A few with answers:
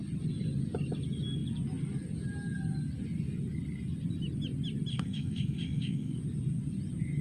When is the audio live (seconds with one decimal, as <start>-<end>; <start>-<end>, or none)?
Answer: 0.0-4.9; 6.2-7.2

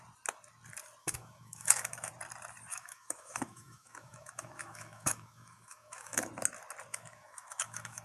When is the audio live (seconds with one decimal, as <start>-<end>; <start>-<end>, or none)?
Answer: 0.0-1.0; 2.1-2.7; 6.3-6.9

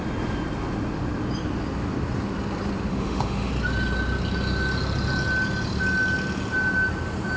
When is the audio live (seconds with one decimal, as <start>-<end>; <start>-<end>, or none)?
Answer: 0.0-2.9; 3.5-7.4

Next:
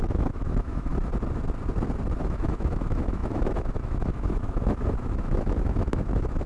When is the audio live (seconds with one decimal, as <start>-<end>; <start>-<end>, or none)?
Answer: 0.9-2.2

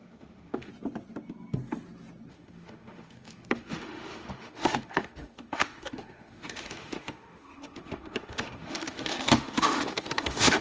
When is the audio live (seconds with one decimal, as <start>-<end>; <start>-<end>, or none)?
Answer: 0.7-2.3

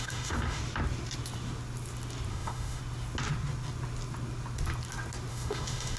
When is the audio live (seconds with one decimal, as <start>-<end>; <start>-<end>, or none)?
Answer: 0.6-2.3; 2.8-5.3

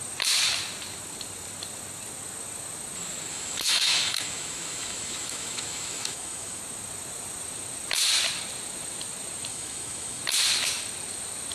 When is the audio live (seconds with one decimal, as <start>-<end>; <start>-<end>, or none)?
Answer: 0.0-3.3; 6.6-9.5; 10.2-11.5